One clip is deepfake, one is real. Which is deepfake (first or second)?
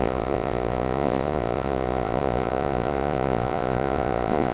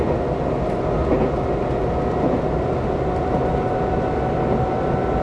first